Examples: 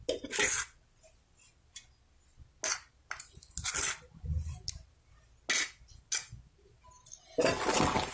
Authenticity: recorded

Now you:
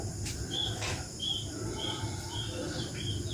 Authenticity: recorded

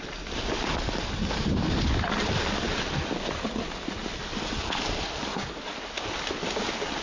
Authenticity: remade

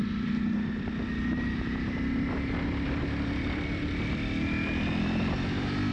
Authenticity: remade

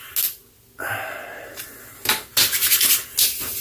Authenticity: recorded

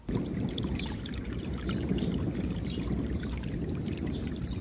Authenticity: remade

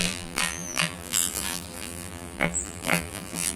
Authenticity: remade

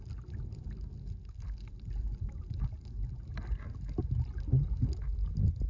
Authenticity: recorded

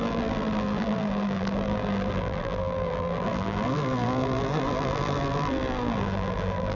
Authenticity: remade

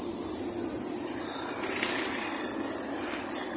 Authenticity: remade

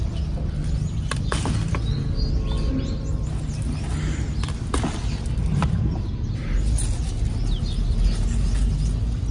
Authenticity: recorded